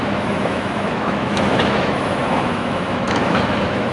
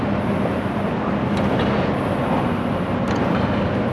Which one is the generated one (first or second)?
first